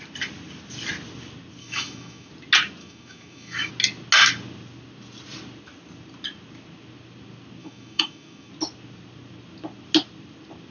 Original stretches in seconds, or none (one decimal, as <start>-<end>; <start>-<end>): 0.0-1.6; 2.3-2.8; 3.7-7.6; 8.5-10.7